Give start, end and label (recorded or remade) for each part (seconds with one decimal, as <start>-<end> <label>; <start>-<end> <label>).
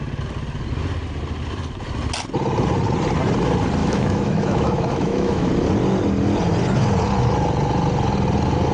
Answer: 0.0-3.8 recorded; 3.8-5.5 remade; 5.5-8.7 recorded